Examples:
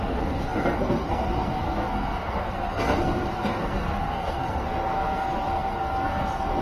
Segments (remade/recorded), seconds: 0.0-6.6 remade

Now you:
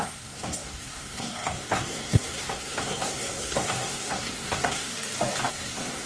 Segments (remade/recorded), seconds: 0.0-4.9 remade; 4.9-5.5 recorded; 5.5-6.1 remade

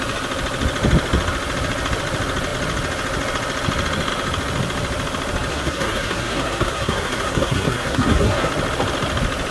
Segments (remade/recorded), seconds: 0.0-5.5 recorded; 5.5-8.5 remade; 8.5-9.5 recorded

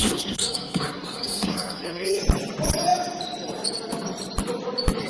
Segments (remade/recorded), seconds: 0.0-2.2 remade; 2.2-5.1 recorded

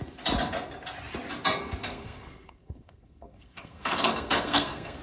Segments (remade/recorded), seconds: 0.0-1.8 recorded; 1.8-5.0 remade

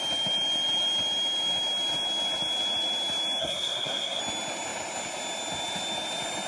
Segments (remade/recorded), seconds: 0.0-3.4 recorded; 3.4-4.2 remade; 4.2-6.5 recorded

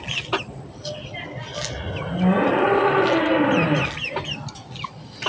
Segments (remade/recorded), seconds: 0.0-5.3 recorded